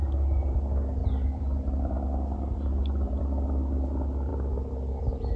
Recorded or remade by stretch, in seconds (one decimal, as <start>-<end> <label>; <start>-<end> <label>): 0.0-5.4 recorded